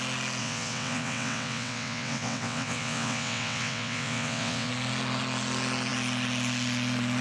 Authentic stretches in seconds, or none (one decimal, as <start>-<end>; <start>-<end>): 0.0-0.4; 4.7-7.2